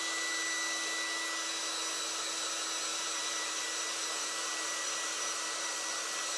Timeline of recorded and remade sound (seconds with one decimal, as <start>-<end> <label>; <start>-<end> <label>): 0.0-2.9 recorded; 2.9-6.4 remade